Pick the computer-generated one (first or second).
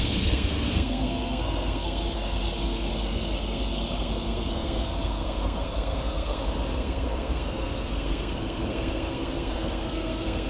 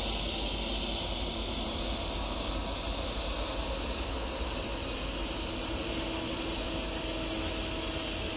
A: first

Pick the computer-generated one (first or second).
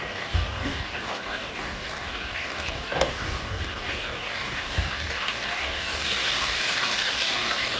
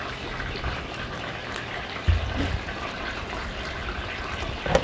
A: first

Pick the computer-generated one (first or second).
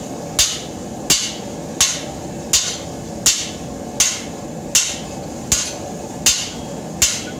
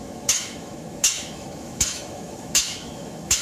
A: second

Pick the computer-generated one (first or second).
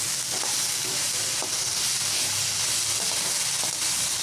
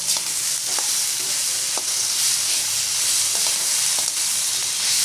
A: second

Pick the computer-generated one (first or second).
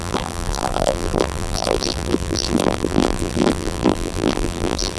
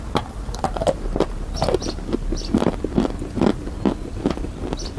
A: first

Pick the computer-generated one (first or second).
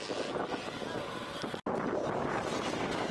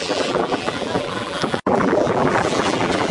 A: second